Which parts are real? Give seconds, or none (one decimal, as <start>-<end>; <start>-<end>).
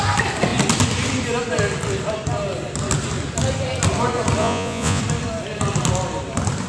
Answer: 0.0-4.4; 5.0-6.7